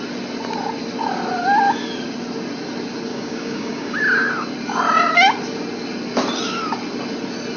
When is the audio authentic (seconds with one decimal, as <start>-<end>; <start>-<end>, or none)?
0.0-3.1; 4.0-7.6